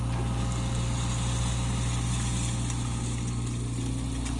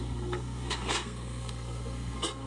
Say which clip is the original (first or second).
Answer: first